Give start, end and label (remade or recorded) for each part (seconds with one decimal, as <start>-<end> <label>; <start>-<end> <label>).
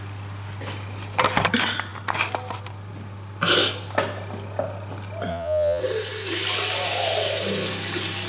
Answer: 0.0-5.3 recorded; 5.3-5.8 remade; 5.8-8.3 recorded